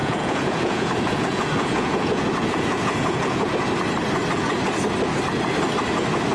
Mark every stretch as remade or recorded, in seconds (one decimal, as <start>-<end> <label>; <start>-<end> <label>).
0.0-3.5 remade; 3.5-6.3 recorded